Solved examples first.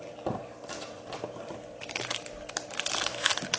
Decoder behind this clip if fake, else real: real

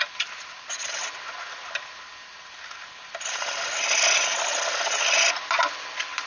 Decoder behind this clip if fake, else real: real